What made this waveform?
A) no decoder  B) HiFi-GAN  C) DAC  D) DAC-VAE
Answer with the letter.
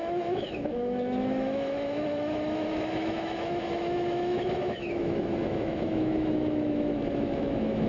D